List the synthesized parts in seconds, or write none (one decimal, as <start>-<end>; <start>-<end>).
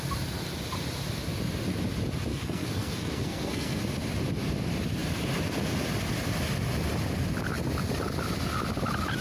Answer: 2.3-3.8